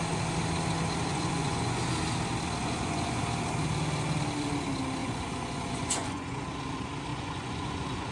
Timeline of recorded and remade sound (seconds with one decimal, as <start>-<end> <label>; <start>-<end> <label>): 0.0-1.1 recorded; 1.1-1.8 remade; 1.8-2.6 recorded; 2.6-3.2 remade; 3.2-5.0 recorded; 5.0-6.4 remade; 6.4-7.1 recorded; 7.1-8.1 remade